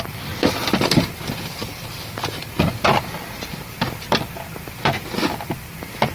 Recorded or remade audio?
remade